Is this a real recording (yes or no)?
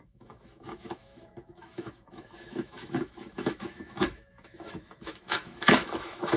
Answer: no